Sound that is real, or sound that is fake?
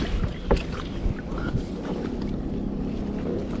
real